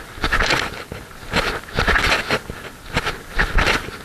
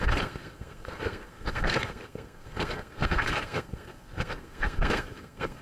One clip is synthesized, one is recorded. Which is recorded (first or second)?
first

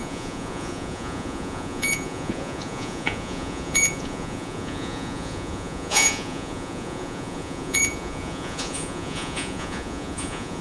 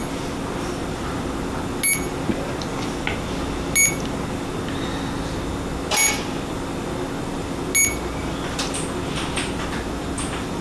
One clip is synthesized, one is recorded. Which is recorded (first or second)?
second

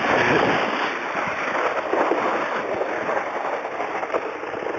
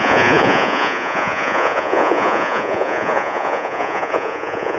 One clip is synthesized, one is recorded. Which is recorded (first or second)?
first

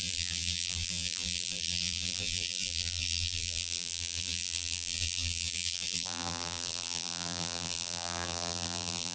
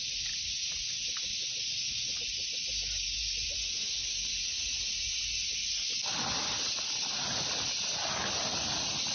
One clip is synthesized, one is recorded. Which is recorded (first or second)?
second